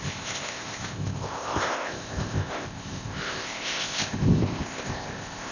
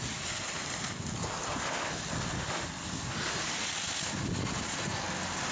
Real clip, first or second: second